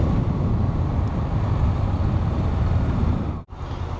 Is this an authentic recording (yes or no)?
yes